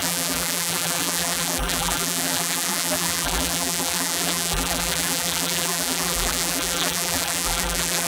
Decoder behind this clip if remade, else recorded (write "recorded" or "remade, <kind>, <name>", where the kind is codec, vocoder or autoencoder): remade, vocoder, BigVGAN v2